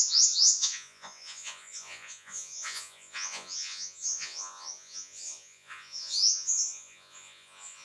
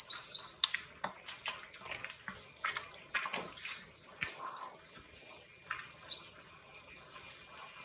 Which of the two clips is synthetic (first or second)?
first